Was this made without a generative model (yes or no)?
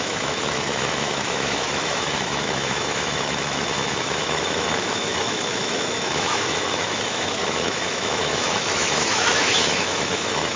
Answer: no